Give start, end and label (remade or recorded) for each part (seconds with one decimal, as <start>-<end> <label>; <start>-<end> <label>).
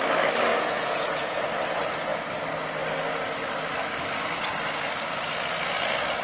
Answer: 0.0-0.5 recorded; 0.5-1.4 remade; 1.4-6.2 recorded